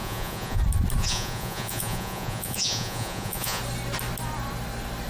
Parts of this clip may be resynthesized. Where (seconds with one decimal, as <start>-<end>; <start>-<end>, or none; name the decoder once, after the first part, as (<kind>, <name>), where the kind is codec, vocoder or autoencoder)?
0.0-0.6 (vocoder, Vocos); 1.0-3.6